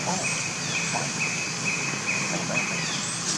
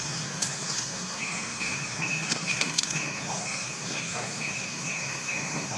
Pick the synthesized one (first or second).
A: second